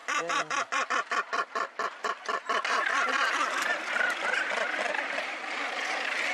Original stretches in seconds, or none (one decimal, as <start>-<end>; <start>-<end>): 0.0-6.3